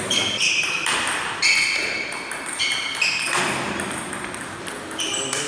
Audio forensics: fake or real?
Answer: real